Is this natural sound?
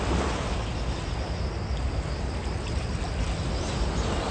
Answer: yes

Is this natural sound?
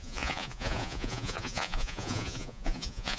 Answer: no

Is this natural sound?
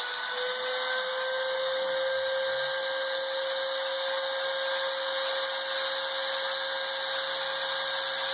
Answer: yes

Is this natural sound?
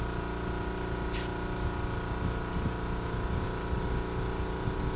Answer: yes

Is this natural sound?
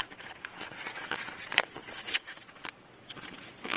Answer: no